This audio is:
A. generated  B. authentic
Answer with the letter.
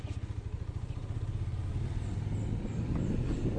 B